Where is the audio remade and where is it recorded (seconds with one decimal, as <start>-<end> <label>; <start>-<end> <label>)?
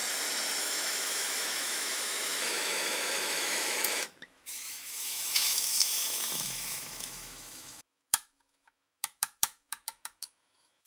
0.0-0.6 recorded; 0.6-10.9 remade